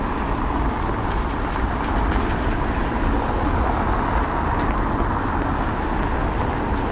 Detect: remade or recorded recorded